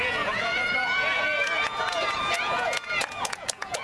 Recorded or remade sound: remade